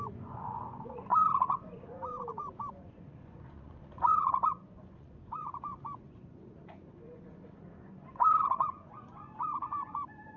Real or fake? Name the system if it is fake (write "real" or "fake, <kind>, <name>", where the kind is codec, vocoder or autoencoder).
fake, vocoder, Vocos